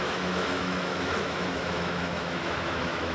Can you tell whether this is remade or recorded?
remade